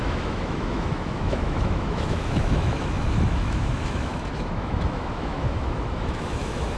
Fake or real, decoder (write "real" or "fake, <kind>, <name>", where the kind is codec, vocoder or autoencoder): fake, autoencoder, DAC-VAE